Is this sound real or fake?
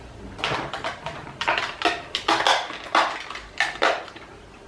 real